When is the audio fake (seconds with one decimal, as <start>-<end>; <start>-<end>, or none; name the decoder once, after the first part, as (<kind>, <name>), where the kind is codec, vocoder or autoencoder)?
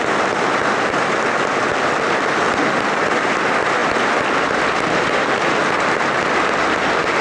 none